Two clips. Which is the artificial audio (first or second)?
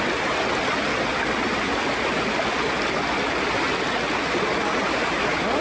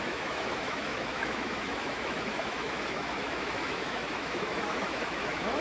second